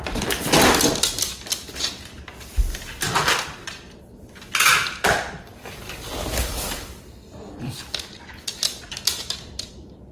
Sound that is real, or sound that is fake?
real